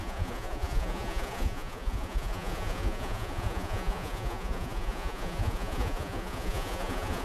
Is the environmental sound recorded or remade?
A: remade